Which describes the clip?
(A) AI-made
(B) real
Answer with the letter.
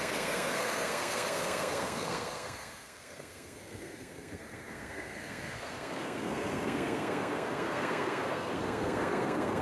A